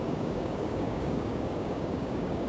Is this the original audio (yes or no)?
no